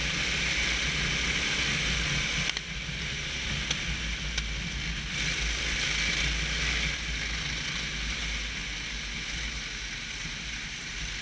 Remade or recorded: recorded